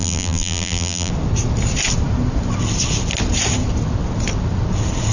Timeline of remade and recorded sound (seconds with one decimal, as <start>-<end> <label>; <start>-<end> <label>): 0.0-1.1 remade; 1.1-5.1 recorded